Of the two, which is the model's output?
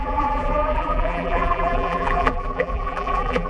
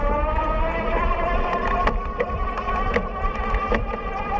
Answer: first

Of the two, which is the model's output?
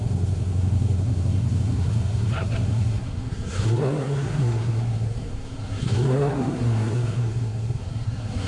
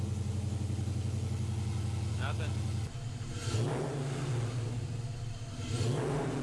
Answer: first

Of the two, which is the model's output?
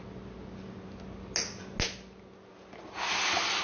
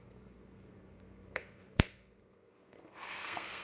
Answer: second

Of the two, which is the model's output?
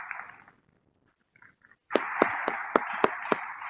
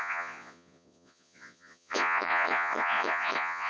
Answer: second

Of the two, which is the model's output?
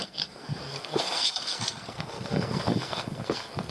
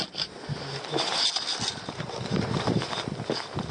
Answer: first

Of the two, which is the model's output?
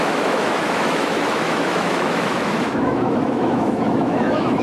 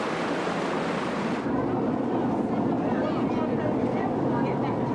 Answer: first